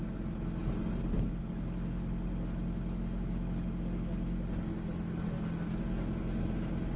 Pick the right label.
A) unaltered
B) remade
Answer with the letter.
A